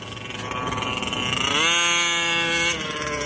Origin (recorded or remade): recorded